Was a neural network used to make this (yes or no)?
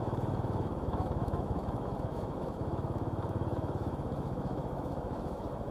yes